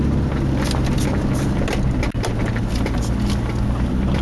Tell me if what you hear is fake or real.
real